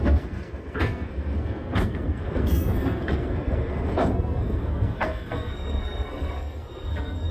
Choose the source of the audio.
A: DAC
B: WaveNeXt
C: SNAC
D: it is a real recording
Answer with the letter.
C